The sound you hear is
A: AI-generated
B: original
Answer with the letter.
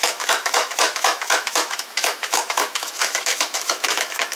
A